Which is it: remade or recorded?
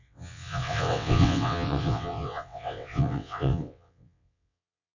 remade